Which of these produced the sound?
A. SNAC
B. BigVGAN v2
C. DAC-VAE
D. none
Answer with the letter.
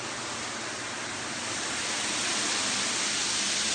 D